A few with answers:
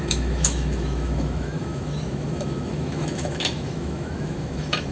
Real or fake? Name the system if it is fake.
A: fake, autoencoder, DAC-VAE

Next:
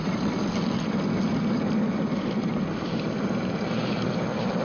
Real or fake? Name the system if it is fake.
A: real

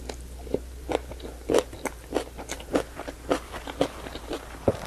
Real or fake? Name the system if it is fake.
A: real